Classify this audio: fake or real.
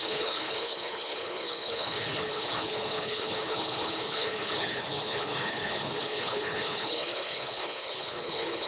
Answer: fake